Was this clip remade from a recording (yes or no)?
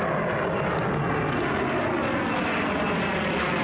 no